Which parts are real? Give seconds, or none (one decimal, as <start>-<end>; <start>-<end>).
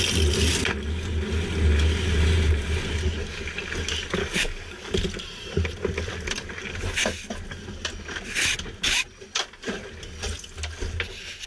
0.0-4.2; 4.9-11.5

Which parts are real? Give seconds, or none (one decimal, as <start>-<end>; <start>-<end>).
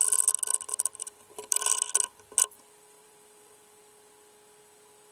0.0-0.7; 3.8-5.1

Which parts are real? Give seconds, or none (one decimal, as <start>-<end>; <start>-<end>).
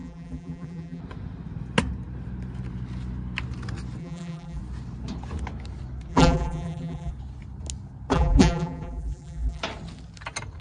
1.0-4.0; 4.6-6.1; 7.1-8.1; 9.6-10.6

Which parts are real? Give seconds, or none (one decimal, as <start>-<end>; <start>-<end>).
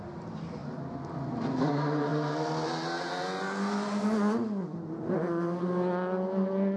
0.0-6.8